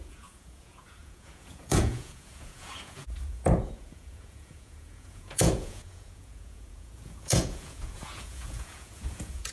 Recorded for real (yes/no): no